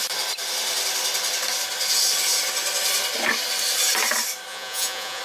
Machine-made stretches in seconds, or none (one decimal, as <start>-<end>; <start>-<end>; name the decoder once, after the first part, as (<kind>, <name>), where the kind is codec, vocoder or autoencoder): 4.5-5.2 (vocoder, Vocos)